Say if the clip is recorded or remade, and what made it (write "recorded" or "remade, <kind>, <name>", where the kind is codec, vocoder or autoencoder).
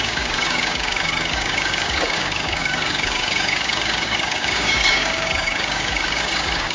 remade, codec, DAC